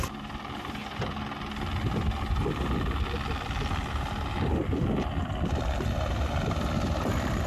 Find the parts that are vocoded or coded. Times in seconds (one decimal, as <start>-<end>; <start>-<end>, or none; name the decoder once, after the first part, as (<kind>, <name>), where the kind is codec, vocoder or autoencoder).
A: 0.0-0.8 (vocoder, BigVGAN v2); 5.2-7.5

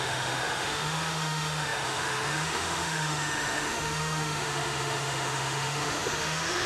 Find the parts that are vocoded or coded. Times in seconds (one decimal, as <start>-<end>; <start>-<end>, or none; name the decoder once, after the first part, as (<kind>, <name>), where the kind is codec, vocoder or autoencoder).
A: 0.0-6.7 (autoencoder, DAC-VAE)

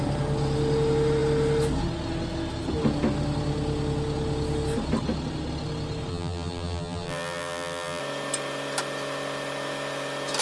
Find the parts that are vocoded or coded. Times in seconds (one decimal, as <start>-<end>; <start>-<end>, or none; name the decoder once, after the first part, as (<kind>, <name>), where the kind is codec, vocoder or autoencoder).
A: 6.1-8.0 (vocoder, BigVGAN v2)

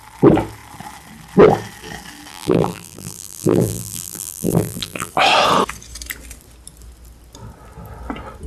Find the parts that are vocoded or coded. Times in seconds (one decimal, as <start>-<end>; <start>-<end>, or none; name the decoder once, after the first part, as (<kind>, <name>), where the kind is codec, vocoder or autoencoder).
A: 2.3-5.1 (vocoder, BigVGAN v2)

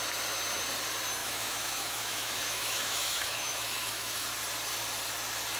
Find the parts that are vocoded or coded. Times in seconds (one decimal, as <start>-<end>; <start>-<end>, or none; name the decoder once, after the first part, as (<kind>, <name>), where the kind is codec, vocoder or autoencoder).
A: 1.2-4.3 (autoencoder, DAC-VAE)

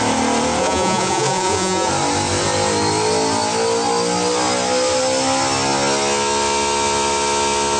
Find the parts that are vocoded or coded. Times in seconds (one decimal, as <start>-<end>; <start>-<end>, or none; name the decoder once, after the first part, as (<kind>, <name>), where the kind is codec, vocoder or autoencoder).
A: 0.6-1.9 (vocoder, Vocos)